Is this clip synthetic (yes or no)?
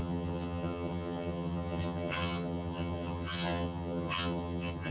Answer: yes